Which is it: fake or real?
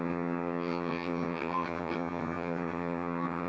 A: fake